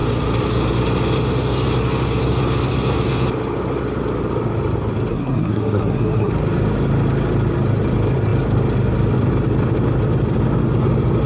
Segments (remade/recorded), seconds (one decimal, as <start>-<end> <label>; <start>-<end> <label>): 0.0-5.1 recorded; 5.1-6.3 remade; 6.3-11.3 recorded

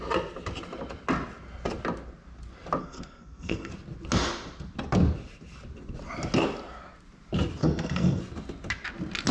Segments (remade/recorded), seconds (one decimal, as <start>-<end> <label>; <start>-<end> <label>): 0.0-2.8 recorded; 2.8-3.7 remade; 3.7-7.6 recorded; 7.6-8.2 remade; 8.2-9.3 recorded

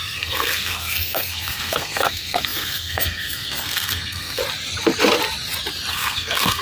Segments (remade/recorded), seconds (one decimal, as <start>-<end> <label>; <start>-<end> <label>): 0.0-4.4 remade; 4.4-5.9 recorded; 5.9-6.6 remade

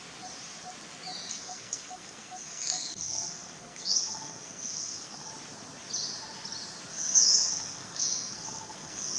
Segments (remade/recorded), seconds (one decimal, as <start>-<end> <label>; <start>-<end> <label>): 0.0-1.3 recorded; 1.3-5.3 remade; 5.3-6.9 recorded; 6.9-9.2 remade

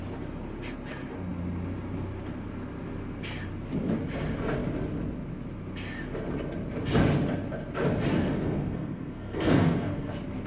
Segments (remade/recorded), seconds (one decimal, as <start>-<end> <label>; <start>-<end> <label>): 0.0-8.1 recorded; 8.1-10.1 remade; 10.1-10.5 recorded

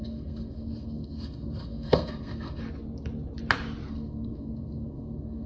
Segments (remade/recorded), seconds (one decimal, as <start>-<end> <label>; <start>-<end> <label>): 0.0-2.6 remade; 2.6-3.9 recorded; 3.9-5.5 remade